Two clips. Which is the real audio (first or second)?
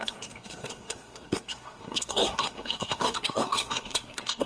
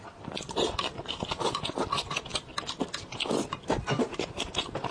second